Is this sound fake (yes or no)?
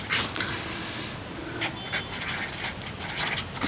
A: no